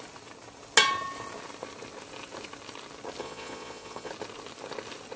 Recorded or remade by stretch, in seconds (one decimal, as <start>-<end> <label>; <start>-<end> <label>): 0.0-3.2 recorded; 3.2-4.1 remade; 4.1-5.2 recorded